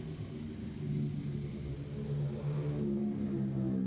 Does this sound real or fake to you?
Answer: real